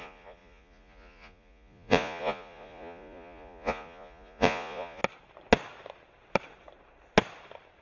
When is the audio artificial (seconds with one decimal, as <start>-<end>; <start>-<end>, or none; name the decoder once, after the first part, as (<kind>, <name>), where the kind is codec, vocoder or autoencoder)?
0.0-5.0 (vocoder, Vocos)

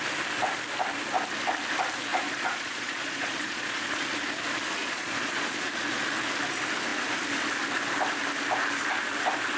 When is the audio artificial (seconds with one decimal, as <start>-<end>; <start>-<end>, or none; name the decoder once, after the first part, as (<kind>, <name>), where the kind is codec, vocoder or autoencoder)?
2.1-3.8 (vocoder, Vocos); 4.8-5.7